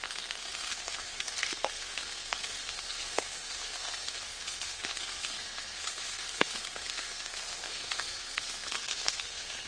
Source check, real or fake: fake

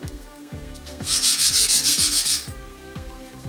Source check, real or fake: fake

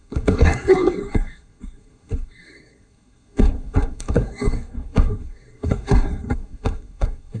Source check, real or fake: fake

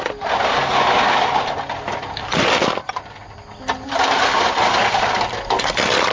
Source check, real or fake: real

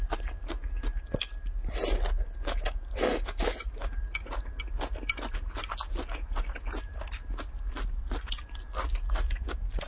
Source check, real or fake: real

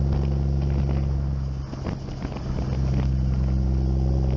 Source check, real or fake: real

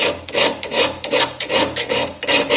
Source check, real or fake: real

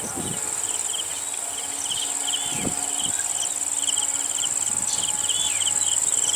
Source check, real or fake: real